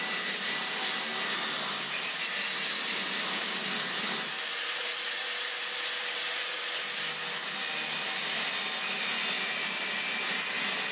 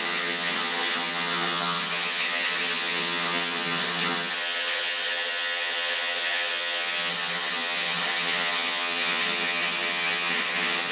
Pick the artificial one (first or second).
second